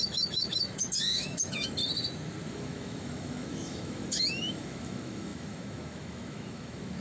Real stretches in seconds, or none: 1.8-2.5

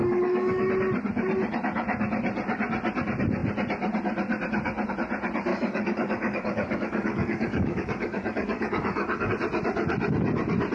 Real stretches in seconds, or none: 0.7-5.5; 9.3-10.7

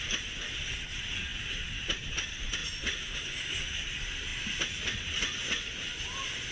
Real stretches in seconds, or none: 0.0-6.5

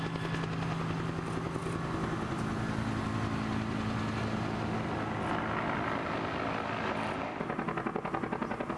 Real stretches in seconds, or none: 0.0-8.8

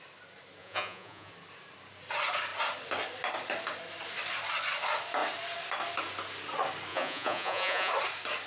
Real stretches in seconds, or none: 0.0-0.6; 1.3-6.9; 7.9-8.5

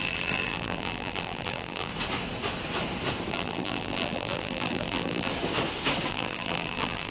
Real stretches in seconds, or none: 1.9-3.3; 5.3-6.1